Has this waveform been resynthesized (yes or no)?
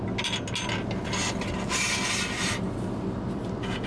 no